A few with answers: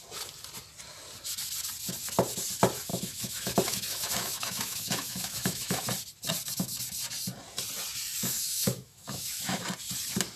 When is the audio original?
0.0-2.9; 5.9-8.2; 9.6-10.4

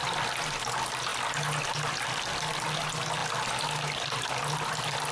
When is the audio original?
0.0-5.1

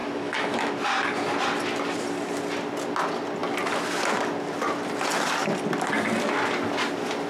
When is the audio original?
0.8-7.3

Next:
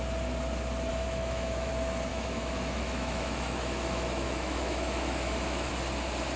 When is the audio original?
0.0-0.9; 1.7-2.1; 5.7-6.4

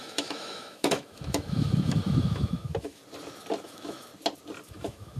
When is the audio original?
3.0-3.6; 4.1-4.6

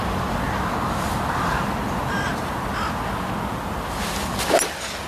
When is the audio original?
0.0-5.1